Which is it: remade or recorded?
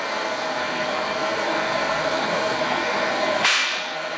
remade